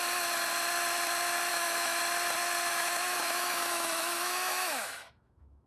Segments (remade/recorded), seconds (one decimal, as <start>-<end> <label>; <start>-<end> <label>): 0.0-1.5 recorded; 1.5-2.0 remade; 2.0-2.7 recorded; 2.7-5.7 remade